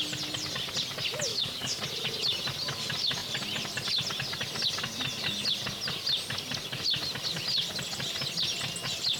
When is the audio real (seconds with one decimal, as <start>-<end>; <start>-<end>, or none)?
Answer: 0.0-1.3; 1.8-9.2